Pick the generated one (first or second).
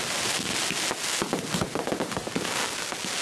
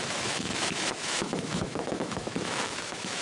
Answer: second